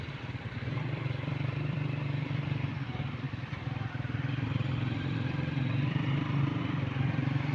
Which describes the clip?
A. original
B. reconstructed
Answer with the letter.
B